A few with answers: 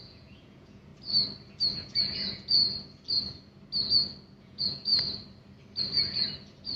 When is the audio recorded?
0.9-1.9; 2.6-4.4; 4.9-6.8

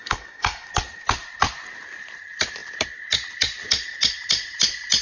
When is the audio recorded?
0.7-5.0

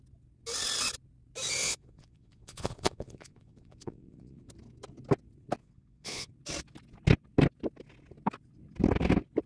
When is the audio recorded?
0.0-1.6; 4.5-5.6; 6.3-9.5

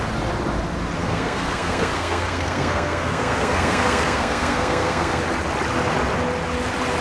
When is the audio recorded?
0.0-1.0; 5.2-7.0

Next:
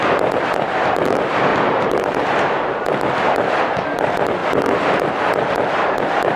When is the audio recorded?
0.0-6.4

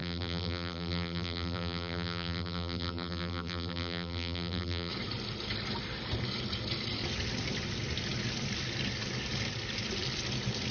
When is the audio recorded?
4.9-10.7

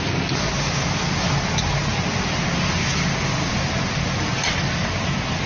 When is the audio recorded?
0.0-2.8; 3.5-5.5